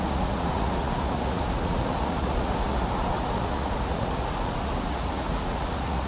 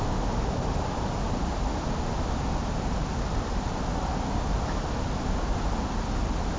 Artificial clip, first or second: first